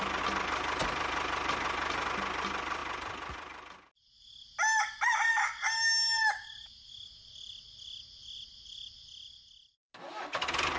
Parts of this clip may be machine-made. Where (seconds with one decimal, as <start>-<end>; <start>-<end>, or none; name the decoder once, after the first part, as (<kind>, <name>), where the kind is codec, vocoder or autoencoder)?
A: none